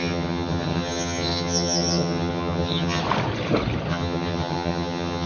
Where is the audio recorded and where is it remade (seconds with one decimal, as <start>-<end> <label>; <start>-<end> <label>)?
0.0-3.0 remade; 3.0-3.9 recorded; 3.9-5.3 remade